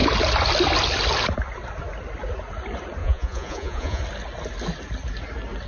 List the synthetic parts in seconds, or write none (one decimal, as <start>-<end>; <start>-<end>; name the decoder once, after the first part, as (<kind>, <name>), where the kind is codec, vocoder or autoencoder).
3.0-4.0 (vocoder, Vocos)